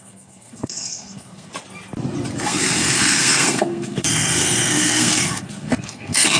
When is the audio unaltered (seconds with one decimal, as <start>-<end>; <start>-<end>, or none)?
1.5-2.4